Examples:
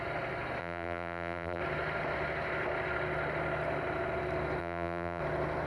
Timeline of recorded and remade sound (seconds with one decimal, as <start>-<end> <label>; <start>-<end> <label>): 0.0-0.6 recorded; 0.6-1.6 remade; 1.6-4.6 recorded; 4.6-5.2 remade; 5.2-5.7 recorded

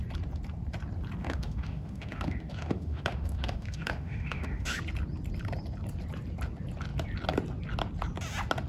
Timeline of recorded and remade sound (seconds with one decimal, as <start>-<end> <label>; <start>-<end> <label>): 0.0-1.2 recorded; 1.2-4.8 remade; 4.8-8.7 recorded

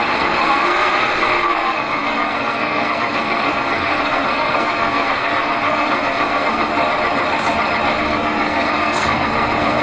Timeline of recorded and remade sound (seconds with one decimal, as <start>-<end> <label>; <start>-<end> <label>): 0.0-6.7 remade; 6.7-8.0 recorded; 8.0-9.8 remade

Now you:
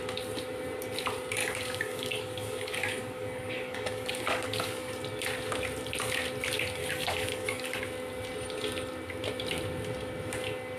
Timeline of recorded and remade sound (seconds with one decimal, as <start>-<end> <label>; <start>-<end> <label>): 0.0-1.4 recorded; 1.4-4.9 remade; 4.9-6.8 recorded; 6.8-7.8 remade; 7.8-10.8 recorded

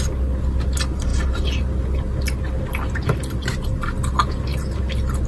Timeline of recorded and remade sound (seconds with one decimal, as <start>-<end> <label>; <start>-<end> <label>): 0.0-5.3 recorded